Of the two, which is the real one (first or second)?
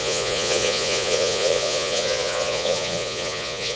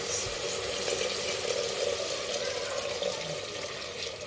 second